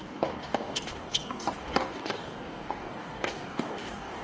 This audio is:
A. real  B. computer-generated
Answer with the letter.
B